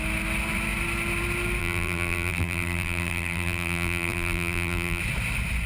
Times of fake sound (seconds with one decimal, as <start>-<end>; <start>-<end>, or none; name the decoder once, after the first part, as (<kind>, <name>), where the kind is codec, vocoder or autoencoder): 1.6-5.0 (vocoder, BigVGAN v2)